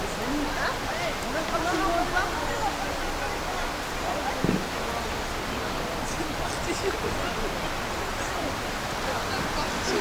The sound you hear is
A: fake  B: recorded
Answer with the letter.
B